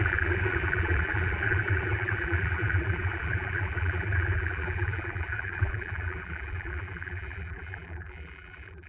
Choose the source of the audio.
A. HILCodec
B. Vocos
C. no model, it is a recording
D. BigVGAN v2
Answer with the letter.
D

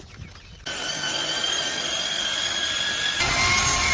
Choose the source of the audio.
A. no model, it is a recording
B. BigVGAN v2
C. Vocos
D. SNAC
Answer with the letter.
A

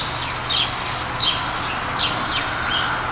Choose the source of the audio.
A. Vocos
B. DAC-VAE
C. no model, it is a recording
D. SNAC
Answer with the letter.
C